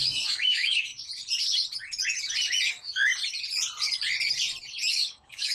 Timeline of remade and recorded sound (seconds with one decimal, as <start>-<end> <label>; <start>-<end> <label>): 0.0-0.9 remade; 0.9-2.7 recorded; 2.7-3.1 remade; 3.1-4.9 recorded; 4.9-5.5 remade